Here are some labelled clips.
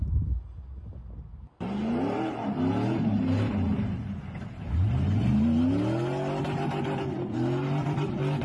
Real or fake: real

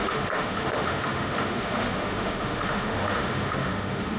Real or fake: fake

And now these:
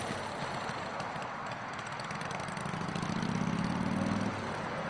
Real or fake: real